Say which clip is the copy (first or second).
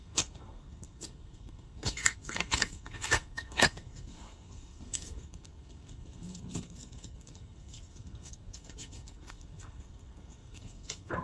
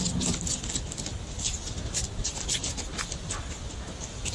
first